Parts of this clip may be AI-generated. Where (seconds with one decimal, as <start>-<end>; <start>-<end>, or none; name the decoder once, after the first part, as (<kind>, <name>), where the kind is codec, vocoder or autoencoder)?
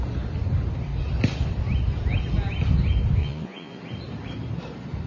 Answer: 3.2-3.8 (vocoder, Vocos)